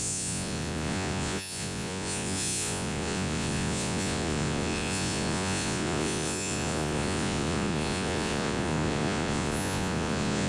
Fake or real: fake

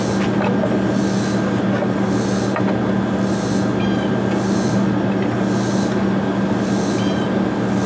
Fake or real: real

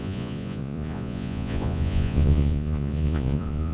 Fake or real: fake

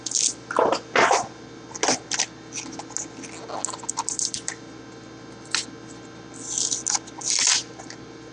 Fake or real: real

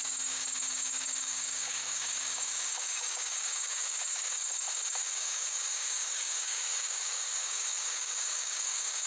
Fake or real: fake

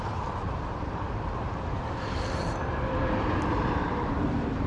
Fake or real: fake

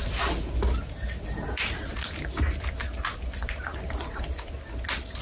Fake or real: real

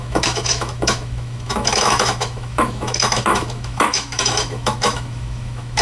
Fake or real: fake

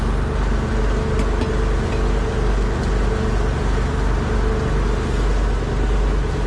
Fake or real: real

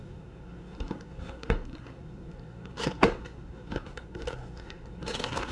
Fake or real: fake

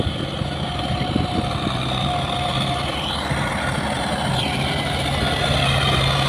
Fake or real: real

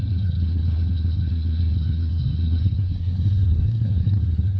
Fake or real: fake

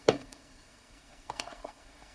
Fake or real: fake